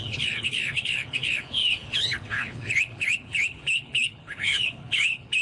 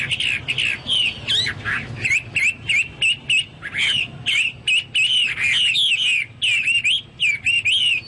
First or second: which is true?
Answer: second